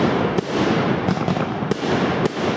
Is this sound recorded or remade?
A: recorded